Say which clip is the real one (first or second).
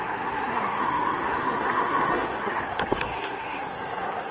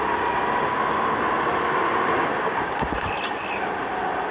second